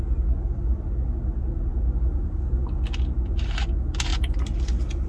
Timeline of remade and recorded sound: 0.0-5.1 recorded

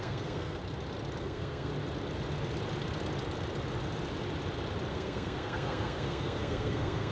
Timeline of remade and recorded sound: 0.0-0.6 remade; 0.6-1.2 recorded; 1.2-1.7 remade; 1.7-4.9 recorded; 4.9-7.1 remade

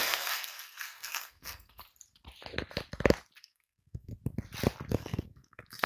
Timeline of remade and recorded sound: 0.0-1.8 remade; 1.8-3.4 recorded; 3.4-4.1 remade; 4.1-4.9 recorded; 4.9-5.9 remade

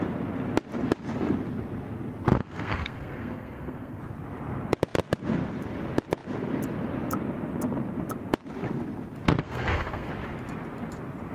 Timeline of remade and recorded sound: 0.0-2.3 recorded; 2.3-4.0 remade; 4.0-9.4 recorded; 9.4-10.1 remade; 10.1-11.3 recorded

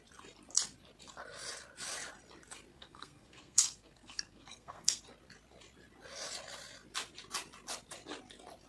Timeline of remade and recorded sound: 0.0-2.7 recorded; 2.7-5.0 remade; 5.0-8.7 recorded

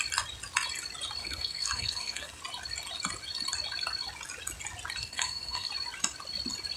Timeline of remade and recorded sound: 0.0-1.2 recorded; 1.2-2.4 remade; 2.4-5.0 recorded; 5.0-5.7 remade; 5.7-6.8 recorded